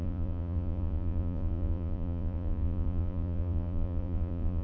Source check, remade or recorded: remade